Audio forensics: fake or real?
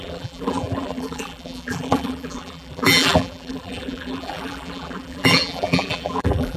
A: fake